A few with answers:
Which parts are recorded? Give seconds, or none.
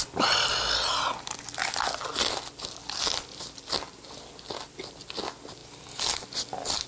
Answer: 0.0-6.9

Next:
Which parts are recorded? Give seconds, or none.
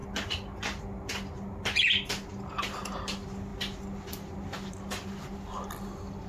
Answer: 0.0-6.3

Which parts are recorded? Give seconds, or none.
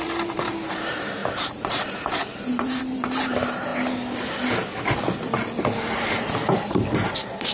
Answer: 3.7-5.6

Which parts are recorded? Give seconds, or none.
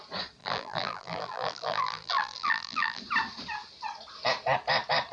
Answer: 0.0-0.4; 3.0-5.1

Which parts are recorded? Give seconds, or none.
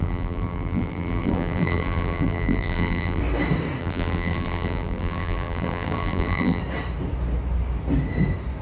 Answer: 3.2-3.8; 6.6-8.6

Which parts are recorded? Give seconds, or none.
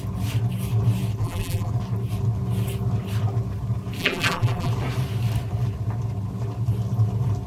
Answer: 0.0-1.2; 1.7-4.0; 4.7-7.5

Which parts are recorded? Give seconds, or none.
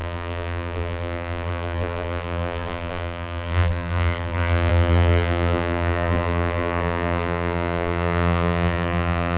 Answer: none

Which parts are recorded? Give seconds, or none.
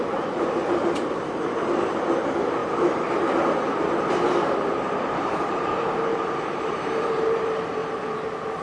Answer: 7.8-8.6